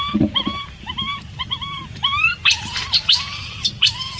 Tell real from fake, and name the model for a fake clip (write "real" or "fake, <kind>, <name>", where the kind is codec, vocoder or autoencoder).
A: real